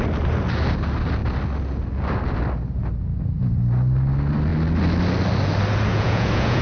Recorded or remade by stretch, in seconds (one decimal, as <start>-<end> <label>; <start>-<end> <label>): 0.0-5.9 recorded; 5.9-6.6 remade